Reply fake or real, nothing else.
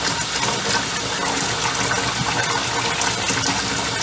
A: real